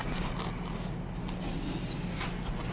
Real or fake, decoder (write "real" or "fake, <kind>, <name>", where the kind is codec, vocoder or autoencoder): real